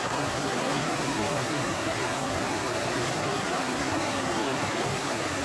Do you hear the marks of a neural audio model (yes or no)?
yes